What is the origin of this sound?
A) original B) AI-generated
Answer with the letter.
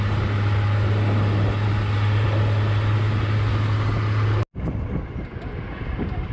A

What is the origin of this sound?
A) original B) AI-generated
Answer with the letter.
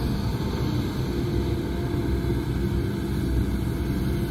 A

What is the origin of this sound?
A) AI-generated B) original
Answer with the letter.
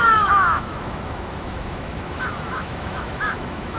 A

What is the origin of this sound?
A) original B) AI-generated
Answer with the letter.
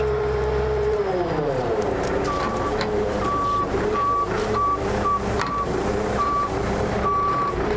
B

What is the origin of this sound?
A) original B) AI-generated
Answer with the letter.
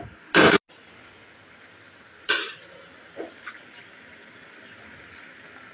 A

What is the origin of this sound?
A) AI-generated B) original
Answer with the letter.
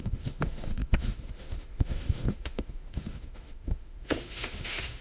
A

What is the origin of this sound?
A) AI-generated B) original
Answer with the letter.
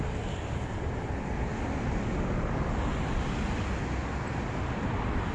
B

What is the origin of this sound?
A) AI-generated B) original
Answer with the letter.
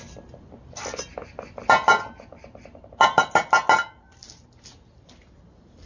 B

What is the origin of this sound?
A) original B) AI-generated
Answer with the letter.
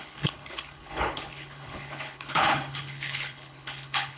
B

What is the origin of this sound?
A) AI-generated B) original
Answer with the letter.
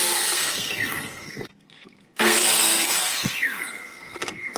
A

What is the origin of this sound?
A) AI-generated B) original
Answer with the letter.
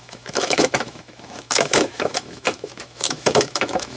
A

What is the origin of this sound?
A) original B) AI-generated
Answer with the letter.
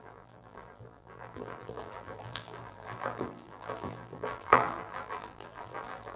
B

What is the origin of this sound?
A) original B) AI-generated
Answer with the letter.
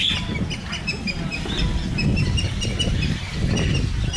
A